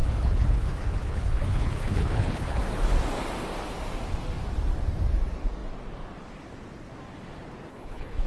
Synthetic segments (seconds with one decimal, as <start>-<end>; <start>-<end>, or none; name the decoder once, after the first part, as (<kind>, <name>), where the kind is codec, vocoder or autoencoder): 0.0-2.6 (codec, HILCodec); 7.7-8.3